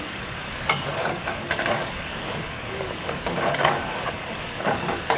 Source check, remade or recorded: remade